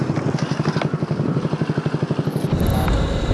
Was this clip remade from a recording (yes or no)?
no